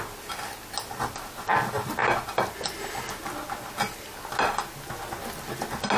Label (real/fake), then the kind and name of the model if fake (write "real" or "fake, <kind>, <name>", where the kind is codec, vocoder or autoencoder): real